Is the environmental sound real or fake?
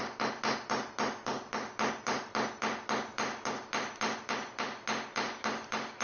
real